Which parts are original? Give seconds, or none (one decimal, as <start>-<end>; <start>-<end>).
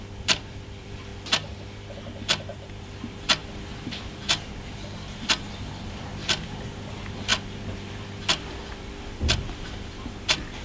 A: 1.1-2.2; 7.3-7.9